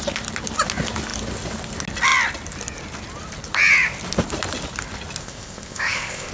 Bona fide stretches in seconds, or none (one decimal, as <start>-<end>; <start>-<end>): 0.0-5.2